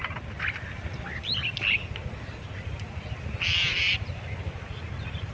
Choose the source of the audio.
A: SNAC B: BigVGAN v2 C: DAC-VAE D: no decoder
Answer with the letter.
D